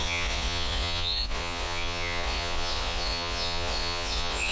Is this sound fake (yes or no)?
yes